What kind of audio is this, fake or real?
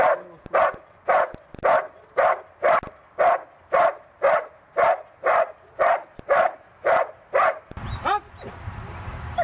real